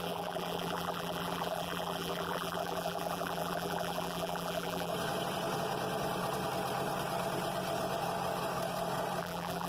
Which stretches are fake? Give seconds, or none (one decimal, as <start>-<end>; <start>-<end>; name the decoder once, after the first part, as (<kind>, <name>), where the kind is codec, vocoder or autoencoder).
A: 0.0-4.9 (vocoder, BigVGAN v2); 9.2-9.7